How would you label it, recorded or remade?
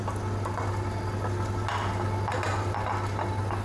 recorded